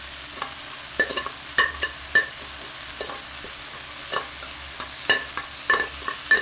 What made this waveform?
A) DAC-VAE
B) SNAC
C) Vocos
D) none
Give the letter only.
D